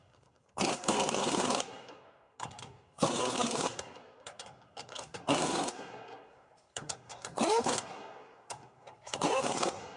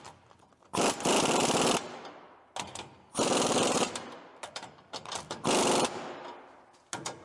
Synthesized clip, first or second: first